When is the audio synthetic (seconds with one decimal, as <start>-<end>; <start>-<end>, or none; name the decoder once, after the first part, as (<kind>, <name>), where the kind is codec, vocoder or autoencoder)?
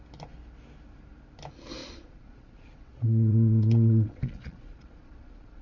1.8-5.6 (vocoder, Vocos)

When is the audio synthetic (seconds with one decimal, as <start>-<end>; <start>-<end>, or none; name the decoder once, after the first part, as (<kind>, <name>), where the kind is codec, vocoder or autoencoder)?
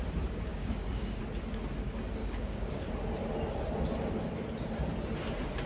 0.5-1.2 (codec, DAC); 2.2-2.9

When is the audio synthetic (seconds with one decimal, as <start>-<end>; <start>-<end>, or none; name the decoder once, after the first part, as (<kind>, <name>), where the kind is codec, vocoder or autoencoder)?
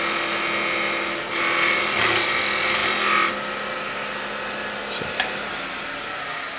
none